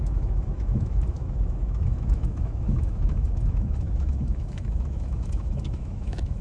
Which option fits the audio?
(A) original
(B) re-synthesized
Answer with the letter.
B